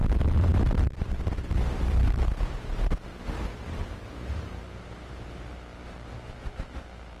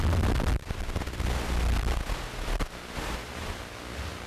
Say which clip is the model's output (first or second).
first